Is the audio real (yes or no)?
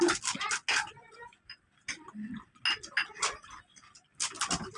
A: yes